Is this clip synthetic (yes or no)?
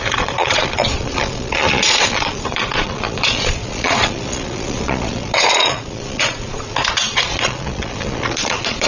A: yes